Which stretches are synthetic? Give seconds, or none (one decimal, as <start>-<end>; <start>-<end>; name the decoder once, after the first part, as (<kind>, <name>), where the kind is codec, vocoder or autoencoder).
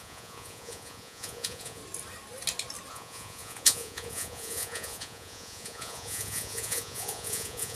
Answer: 0.0-1.8 (vocoder, Vocos); 2.9-7.8